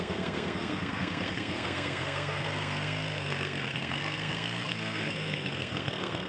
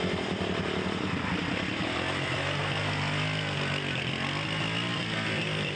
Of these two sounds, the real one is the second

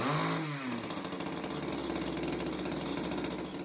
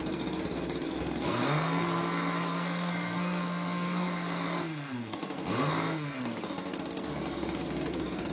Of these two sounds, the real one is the first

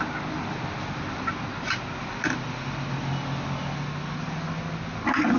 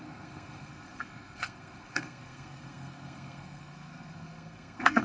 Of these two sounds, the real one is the first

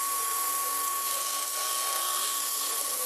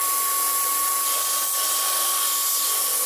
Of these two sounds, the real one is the second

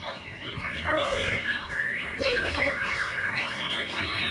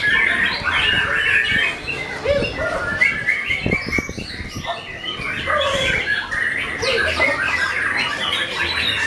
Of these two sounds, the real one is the second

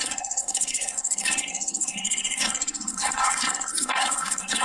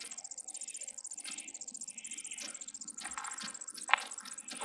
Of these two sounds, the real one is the second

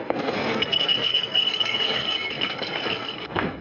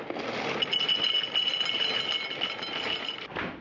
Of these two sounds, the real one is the second